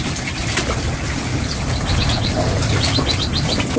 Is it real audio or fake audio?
real